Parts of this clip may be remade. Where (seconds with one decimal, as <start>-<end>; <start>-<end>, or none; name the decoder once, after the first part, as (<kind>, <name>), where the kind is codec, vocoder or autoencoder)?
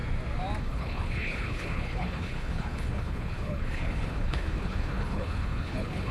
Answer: 0.6-6.1 (codec, HILCodec)